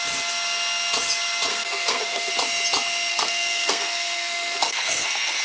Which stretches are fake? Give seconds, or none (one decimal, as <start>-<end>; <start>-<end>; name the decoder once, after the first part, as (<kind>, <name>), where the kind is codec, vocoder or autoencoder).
1.5-2.3 (codec, SNAC); 3.1-5.4